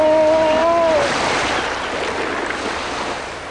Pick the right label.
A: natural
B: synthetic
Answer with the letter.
A